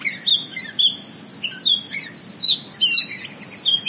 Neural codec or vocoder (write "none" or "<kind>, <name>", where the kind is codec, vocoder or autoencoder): none